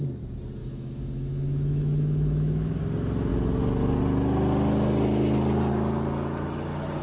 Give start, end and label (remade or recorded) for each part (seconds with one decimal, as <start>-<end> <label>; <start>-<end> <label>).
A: 0.0-0.6 recorded; 0.6-2.8 remade; 2.8-7.0 recorded